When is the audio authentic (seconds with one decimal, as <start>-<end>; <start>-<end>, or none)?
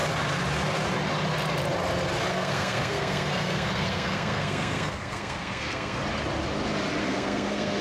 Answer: 0.0-2.3; 6.0-7.0